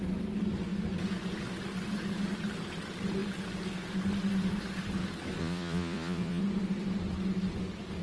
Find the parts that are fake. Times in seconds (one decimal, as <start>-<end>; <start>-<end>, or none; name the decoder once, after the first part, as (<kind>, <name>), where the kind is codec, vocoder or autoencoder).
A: 5.4-6.4 (vocoder, Vocos)